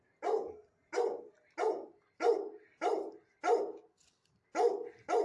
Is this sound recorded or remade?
recorded